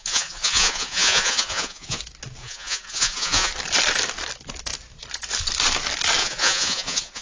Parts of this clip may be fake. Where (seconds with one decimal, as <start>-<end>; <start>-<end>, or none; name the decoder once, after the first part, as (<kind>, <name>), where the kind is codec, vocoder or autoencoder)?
0.0-2.0 (vocoder, Vocos); 2.4-3.5; 6.2-7.2